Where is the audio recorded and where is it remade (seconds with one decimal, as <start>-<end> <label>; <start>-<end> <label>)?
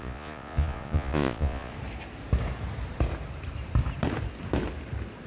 0.0-1.7 remade; 1.7-5.3 recorded